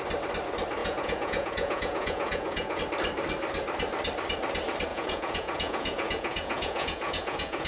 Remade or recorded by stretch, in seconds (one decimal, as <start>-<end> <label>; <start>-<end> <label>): 0.0-0.8 recorded; 0.8-2.8 remade; 2.8-4.9 recorded; 4.9-7.7 remade